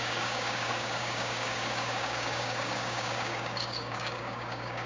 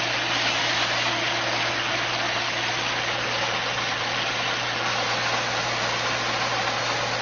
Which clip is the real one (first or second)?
second